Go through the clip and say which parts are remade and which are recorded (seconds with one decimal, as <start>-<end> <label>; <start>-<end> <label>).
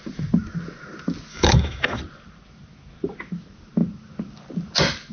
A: 0.0-1.3 recorded; 1.3-2.0 remade; 2.0-5.1 recorded